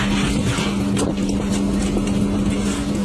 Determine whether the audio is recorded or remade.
recorded